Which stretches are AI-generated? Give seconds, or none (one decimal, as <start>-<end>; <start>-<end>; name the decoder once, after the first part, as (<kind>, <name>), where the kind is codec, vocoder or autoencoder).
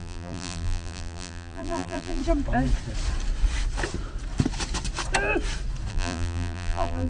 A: 0.0-2.2 (vocoder, BigVGAN v2); 5.9-7.1